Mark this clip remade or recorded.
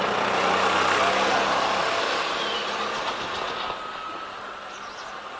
recorded